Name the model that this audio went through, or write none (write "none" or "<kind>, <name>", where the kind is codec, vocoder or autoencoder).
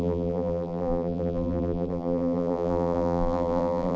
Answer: vocoder, BigVGAN v2